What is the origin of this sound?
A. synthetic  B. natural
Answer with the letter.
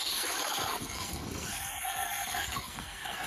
A